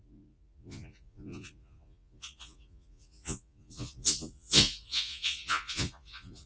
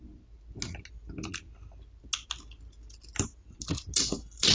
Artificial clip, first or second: first